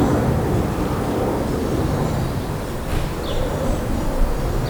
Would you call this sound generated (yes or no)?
no